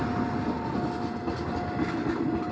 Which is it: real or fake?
real